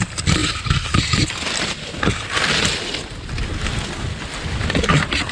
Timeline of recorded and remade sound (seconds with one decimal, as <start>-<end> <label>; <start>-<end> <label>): 0.0-5.3 recorded